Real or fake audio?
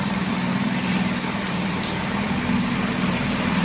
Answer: fake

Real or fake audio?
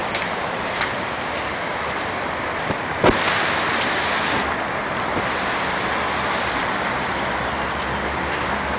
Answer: real